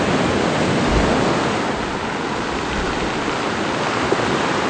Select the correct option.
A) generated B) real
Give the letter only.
B